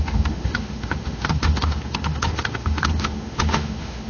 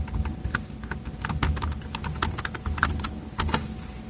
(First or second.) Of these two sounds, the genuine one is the second